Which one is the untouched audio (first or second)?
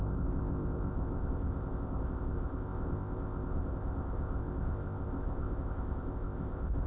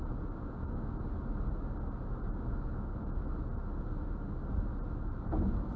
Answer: second